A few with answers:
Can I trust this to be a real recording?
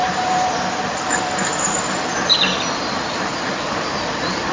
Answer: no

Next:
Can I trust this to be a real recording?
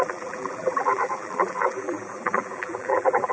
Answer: no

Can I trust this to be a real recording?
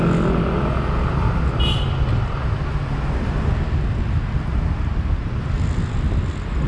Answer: yes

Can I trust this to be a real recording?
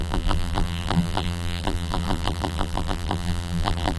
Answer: no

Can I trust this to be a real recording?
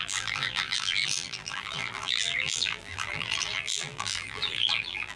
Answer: no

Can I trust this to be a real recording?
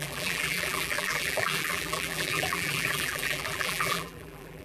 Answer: no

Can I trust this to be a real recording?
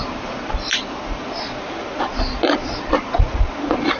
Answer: yes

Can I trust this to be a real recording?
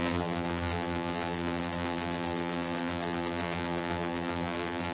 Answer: no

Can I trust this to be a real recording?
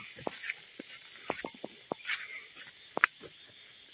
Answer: yes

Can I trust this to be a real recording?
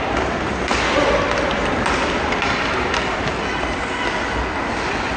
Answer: yes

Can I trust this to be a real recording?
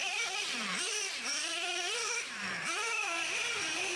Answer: no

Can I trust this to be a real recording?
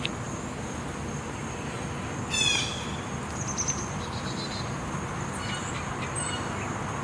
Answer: yes